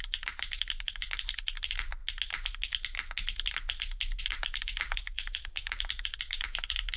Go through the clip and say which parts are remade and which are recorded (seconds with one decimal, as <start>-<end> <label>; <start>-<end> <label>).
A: 0.0-2.0 remade; 2.0-4.2 recorded; 4.2-7.0 remade